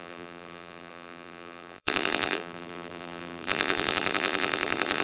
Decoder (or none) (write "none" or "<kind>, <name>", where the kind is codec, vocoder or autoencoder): vocoder, BigVGAN v2